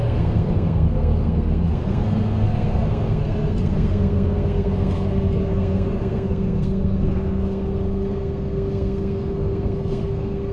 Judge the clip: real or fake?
fake